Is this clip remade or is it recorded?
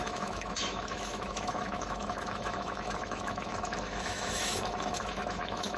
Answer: remade